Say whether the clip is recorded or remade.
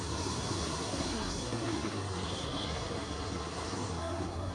remade